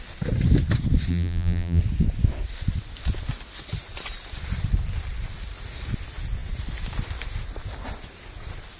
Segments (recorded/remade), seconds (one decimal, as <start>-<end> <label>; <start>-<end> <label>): 0.0-1.1 recorded; 1.1-1.8 remade; 1.8-8.8 recorded

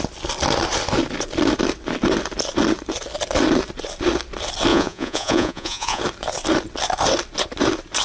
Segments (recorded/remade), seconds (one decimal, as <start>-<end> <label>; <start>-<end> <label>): 0.0-4.7 recorded; 4.7-6.0 remade; 6.0-8.0 recorded

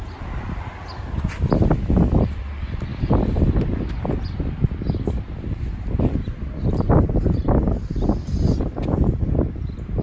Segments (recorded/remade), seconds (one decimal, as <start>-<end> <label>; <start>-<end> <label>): 0.0-10.0 recorded

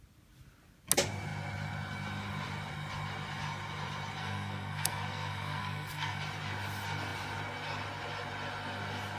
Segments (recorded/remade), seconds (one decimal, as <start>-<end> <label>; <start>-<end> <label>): 0.0-4.2 recorded; 4.2-6.2 remade; 6.2-9.2 recorded